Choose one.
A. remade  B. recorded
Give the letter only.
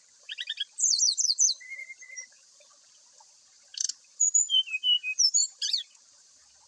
A